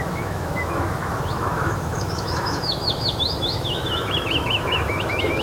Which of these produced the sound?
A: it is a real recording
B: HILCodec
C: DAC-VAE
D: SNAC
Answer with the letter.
C